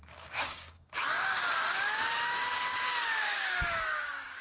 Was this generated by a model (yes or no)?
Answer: yes